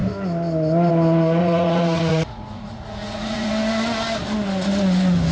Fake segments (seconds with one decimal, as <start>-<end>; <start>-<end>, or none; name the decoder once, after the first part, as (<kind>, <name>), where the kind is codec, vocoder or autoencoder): 1.4-3.5 (vocoder, Vocos)